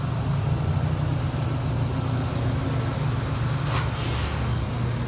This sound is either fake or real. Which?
real